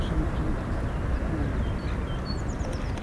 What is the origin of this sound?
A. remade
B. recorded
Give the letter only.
B